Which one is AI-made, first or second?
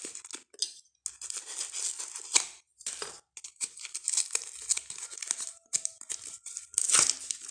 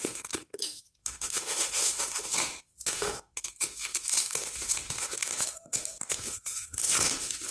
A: second